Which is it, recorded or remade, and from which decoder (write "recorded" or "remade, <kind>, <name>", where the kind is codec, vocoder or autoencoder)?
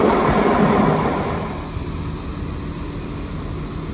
recorded